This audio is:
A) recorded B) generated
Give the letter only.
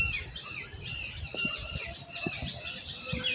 B